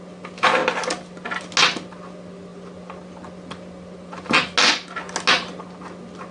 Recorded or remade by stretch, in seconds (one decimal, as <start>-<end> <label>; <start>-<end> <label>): 0.0-0.6 recorded; 0.6-1.4 remade; 1.4-6.3 recorded